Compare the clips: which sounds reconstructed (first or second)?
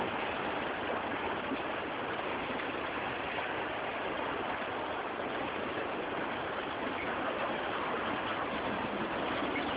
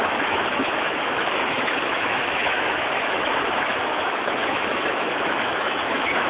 second